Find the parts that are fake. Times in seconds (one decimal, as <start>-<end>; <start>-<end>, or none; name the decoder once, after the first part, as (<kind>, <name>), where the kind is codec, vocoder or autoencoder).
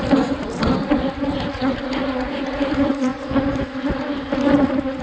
1.8-2.6 (vocoder, Vocos)